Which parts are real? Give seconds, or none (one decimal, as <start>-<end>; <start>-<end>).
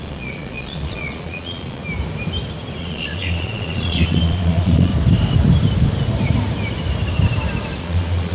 1.8-2.8; 4.9-7.8